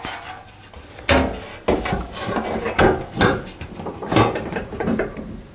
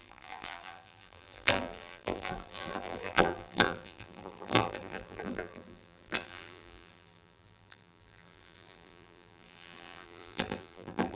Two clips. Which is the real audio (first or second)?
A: first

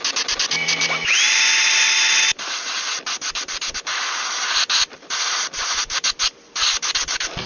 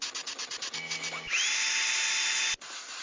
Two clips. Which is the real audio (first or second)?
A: second